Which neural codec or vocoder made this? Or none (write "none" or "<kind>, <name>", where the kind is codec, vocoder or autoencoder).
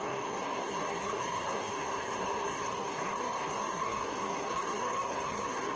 codec, SNAC